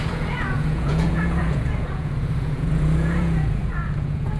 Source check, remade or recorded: remade